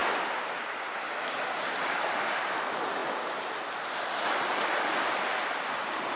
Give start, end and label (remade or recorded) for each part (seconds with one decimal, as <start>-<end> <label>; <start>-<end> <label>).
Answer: 0.0-6.2 recorded